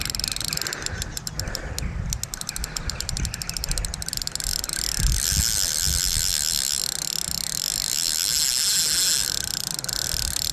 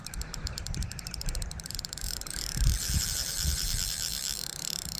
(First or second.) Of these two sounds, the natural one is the first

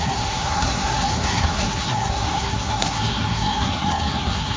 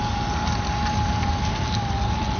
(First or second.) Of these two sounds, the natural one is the second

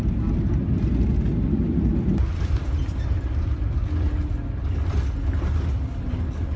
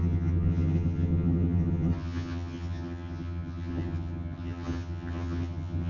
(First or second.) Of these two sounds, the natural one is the first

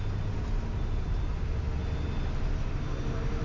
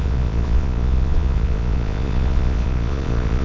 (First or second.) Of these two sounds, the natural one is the first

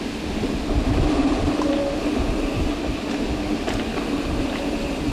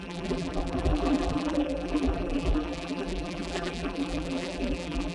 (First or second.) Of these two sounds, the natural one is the first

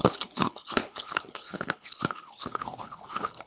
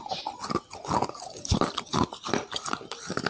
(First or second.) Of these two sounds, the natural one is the second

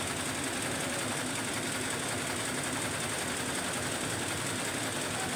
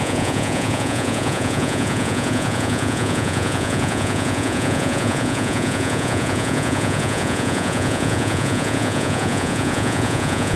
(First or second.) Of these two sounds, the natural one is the first